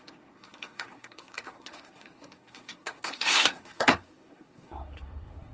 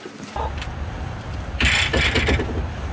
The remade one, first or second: first